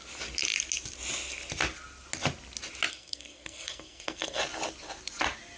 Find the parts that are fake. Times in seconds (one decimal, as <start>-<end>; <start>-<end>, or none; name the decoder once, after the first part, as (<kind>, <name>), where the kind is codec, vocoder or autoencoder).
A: 2.9-4.4 (codec, SNAC)